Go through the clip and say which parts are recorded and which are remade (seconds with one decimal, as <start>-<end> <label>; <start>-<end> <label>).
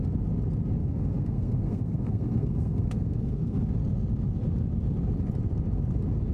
0.0-0.8 recorded; 0.8-3.6 remade; 3.6-6.3 recorded